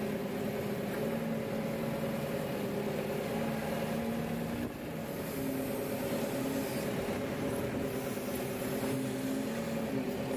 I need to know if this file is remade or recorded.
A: recorded